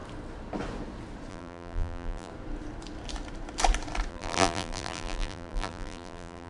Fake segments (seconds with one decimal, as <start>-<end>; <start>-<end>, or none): 1.3-2.3; 4.1-6.5